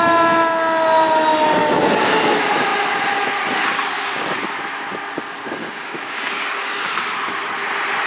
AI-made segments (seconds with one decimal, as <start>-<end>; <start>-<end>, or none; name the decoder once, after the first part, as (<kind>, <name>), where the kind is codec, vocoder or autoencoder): 1.6-2.2 (codec, DAC); 5.6-6.9